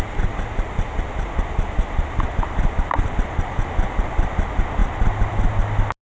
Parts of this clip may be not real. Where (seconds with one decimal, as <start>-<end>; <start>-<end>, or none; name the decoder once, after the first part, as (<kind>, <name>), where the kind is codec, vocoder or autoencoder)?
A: none